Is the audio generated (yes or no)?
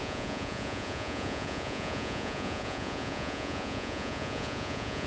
yes